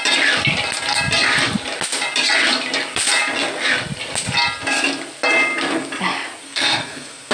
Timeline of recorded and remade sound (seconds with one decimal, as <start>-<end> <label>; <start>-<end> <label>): 0.0-6.4 recorded; 6.4-7.3 remade